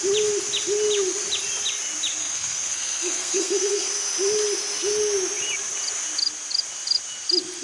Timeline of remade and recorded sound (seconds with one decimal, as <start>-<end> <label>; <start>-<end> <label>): 0.0-2.2 recorded; 2.2-3.9 remade; 3.9-7.6 recorded